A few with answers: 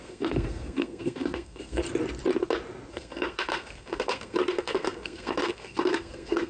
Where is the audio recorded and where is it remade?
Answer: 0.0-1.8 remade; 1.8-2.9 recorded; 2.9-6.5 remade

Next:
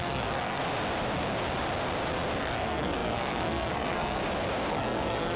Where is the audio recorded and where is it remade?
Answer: 0.0-0.6 remade; 0.6-2.4 recorded; 2.4-4.2 remade; 4.2-4.7 recorded; 4.7-5.4 remade